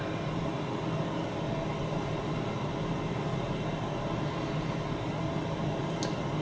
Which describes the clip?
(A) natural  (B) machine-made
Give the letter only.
A